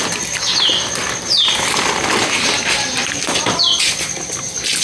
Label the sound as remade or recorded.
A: recorded